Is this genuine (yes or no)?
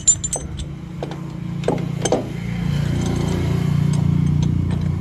yes